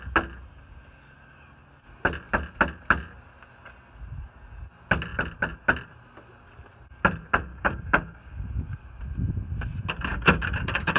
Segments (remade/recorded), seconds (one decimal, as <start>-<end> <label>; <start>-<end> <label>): 0.0-7.5 recorded; 7.5-9.0 remade; 9.0-10.1 recorded; 10.1-11.0 remade